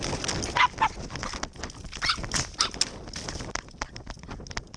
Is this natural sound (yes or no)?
yes